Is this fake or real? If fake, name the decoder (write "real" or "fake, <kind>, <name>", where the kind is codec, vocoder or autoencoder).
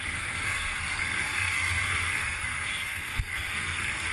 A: fake, codec, SNAC